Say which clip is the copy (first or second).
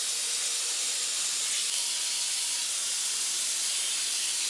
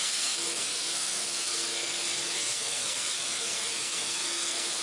second